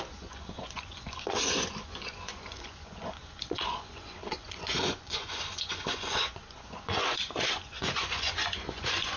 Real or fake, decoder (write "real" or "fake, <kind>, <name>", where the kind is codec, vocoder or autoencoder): fake, vocoder, Vocos